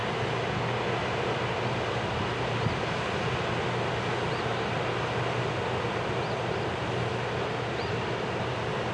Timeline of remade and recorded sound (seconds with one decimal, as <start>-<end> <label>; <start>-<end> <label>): 0.0-8.9 recorded